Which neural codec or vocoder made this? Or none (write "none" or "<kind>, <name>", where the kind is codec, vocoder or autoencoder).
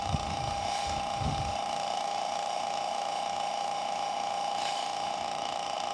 autoencoder, DAC-VAE